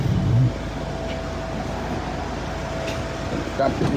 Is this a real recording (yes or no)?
yes